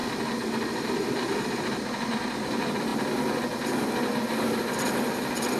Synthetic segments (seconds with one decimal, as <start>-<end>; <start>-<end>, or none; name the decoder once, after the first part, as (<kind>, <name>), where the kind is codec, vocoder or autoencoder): none